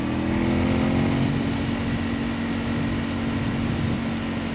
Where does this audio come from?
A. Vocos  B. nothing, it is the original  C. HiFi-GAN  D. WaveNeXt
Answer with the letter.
B